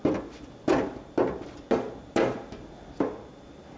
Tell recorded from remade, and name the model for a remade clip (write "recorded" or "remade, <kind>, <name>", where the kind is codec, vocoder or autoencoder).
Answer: recorded